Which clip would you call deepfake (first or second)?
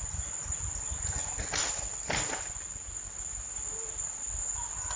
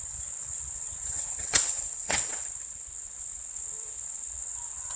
second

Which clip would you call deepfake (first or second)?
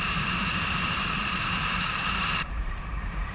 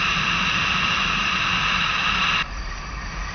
first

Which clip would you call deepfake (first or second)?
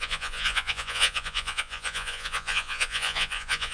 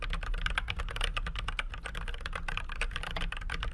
first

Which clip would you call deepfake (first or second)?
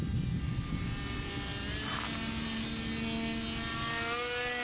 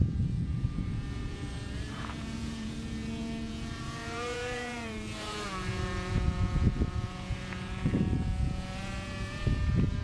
second